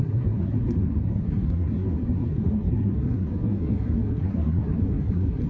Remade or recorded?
remade